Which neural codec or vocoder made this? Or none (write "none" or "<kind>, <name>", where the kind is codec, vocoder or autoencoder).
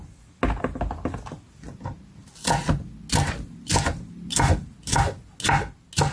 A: none